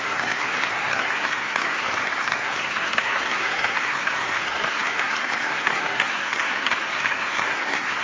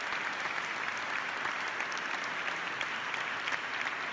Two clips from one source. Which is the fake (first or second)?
first